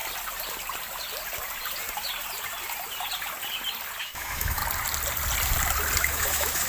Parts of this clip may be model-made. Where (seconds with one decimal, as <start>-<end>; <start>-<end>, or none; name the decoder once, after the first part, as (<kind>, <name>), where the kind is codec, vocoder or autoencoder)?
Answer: 4.0-4.6 (autoencoder, DAC-VAE); 6.0-6.7

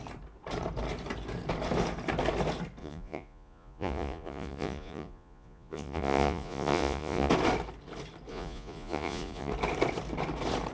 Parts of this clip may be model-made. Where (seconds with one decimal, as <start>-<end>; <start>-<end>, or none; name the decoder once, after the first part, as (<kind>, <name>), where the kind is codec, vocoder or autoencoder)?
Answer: 2.8-7.3 (vocoder, Vocos); 8.3-9.5

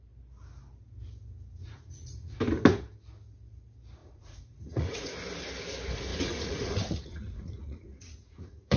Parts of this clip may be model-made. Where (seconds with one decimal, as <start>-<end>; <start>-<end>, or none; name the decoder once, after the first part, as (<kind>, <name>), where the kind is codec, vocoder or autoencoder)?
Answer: 1.6-2.4 (vocoder, Vocos); 4.0-5.1; 6.1-8.8

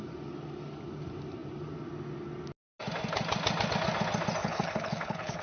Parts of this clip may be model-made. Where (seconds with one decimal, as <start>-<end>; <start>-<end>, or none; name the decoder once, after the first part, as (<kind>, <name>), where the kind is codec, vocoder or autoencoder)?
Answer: 4.4-5.4 (codec, HILCodec)

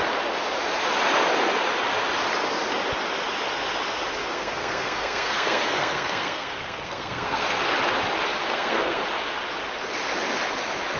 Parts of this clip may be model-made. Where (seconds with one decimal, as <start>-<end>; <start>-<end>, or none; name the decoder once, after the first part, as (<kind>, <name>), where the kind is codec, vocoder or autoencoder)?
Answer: 4.2-7.7 (codec, SNAC); 8.4-9.0

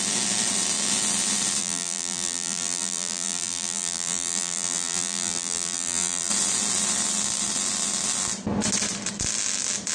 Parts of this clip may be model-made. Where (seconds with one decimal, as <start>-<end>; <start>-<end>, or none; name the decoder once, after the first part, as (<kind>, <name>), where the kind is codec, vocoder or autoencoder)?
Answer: 1.6-6.3 (vocoder, BigVGAN v2)

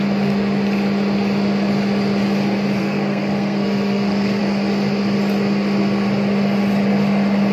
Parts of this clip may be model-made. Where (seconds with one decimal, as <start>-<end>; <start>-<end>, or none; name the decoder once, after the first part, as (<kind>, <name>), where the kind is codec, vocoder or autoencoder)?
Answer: 2.8-4.4 (codec, SNAC)